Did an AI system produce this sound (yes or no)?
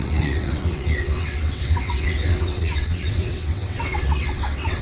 yes